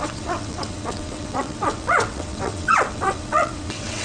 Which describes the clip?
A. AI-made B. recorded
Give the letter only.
A